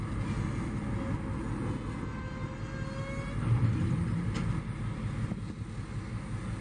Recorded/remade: recorded